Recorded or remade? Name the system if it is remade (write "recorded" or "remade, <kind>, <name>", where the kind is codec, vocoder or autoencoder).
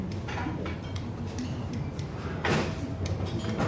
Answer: recorded